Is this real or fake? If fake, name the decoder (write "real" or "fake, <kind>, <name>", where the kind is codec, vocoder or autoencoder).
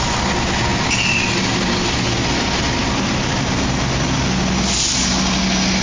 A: real